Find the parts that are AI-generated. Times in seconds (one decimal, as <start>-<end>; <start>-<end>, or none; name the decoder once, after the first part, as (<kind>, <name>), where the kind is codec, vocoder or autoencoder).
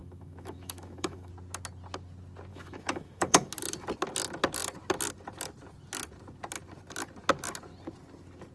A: 0.0-1.3 (autoencoder, DAC-VAE); 2.5-3.5